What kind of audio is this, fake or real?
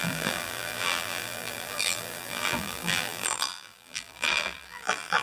fake